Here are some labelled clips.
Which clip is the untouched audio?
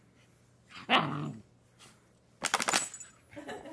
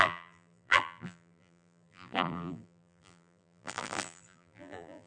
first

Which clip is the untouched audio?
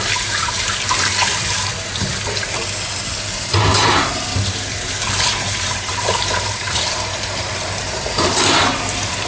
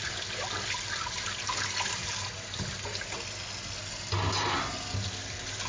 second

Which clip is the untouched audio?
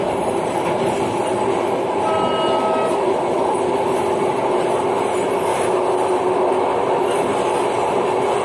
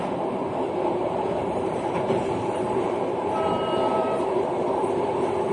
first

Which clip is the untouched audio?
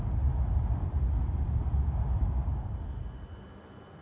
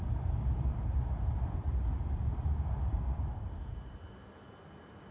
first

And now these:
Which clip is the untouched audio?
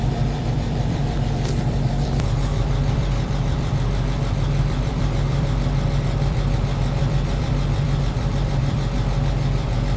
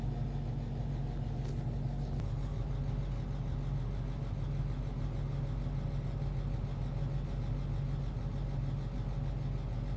second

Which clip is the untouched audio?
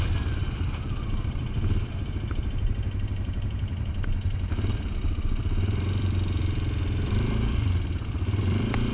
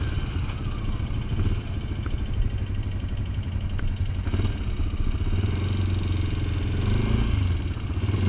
second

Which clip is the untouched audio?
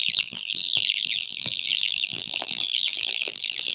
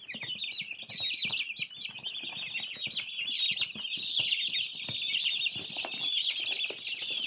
second